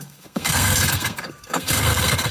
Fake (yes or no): yes